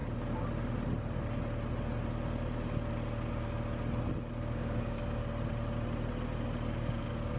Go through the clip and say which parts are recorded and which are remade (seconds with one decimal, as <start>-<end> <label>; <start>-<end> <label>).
0.0-4.4 recorded; 4.4-5.2 remade; 5.2-6.7 recorded; 6.7-7.4 remade